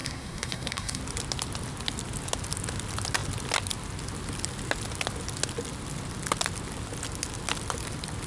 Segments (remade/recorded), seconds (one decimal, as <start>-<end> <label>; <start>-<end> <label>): 0.0-1.0 remade; 1.0-8.3 recorded